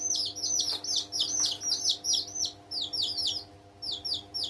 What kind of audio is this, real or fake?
real